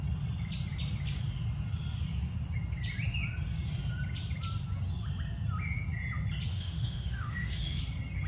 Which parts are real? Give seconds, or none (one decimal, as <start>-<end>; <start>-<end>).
0.0-6.5; 7.8-8.3